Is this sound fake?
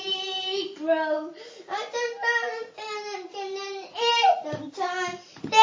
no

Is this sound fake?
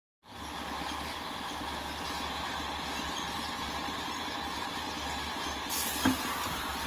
no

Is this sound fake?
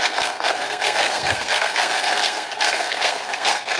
yes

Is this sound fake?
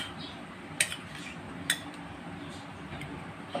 no